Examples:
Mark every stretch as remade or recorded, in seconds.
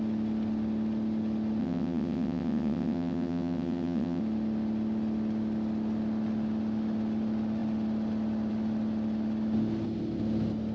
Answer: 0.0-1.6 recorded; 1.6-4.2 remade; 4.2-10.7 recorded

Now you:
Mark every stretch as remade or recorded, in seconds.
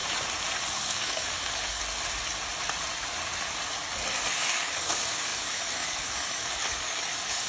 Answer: 0.0-0.7 recorded; 0.7-1.8 remade; 1.8-4.3 recorded; 4.3-7.5 remade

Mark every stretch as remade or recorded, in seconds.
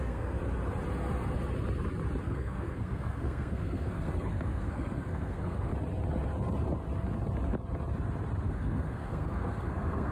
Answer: 0.0-0.4 remade; 0.4-2.2 recorded; 2.2-5.7 remade; 5.7-8.4 recorded; 8.4-10.1 remade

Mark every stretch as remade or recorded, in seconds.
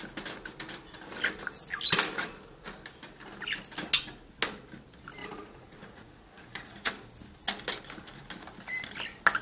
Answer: 0.0-5.2 recorded; 5.2-6.9 remade; 6.9-9.4 recorded